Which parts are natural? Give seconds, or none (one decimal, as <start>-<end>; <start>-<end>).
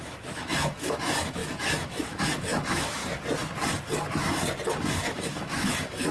3.0-4.9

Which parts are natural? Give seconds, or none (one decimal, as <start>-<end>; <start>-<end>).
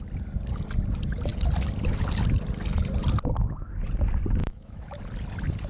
0.0-4.4; 5.0-5.7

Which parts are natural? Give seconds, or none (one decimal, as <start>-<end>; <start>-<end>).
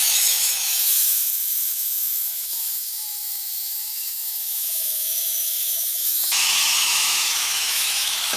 none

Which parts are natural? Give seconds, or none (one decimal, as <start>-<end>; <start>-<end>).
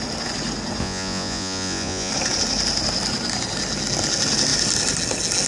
0.0-0.8; 2.1-5.5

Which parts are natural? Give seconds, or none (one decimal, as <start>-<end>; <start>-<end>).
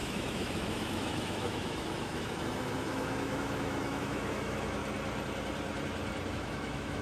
4.8-6.3